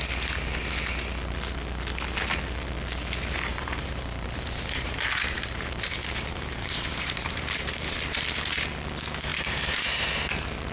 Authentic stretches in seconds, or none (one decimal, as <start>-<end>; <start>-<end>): 0.0-3.5; 8.0-9.3; 10.1-10.7